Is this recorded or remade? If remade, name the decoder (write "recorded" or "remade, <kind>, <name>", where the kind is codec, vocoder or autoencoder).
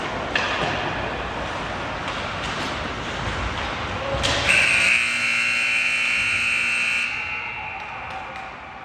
recorded